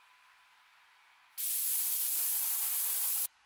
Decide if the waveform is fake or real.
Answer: real